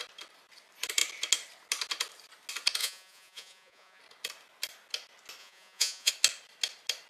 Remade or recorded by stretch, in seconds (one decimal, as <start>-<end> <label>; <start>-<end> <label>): 0.0-2.8 recorded; 2.8-4.0 remade; 4.0-5.4 recorded; 5.4-6.1 remade; 6.1-7.1 recorded